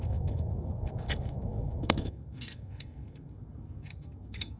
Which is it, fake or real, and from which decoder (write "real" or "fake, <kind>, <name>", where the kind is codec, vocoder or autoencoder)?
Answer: fake, codec, SNAC